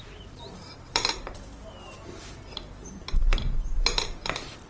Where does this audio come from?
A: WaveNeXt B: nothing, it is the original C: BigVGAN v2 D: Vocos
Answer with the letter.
C